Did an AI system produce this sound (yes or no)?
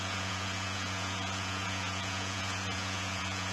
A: yes